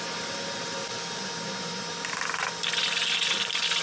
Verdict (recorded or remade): recorded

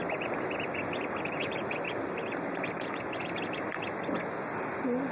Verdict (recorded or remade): recorded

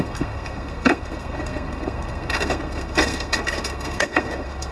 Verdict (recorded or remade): remade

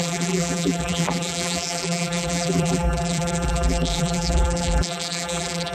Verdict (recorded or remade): remade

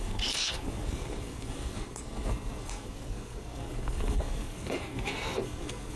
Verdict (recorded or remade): remade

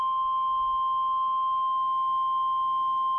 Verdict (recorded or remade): recorded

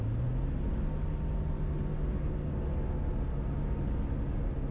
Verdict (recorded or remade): recorded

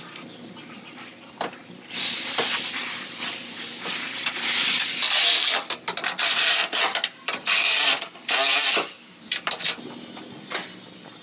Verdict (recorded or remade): remade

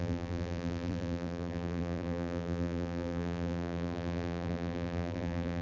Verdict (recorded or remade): remade